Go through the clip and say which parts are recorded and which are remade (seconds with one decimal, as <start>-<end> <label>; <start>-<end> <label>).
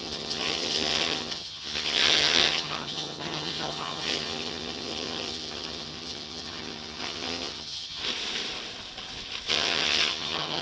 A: 0.0-8.0 remade; 8.0-9.5 recorded; 9.5-10.6 remade